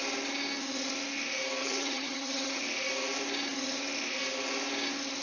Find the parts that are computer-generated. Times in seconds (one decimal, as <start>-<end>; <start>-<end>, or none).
1.6-2.6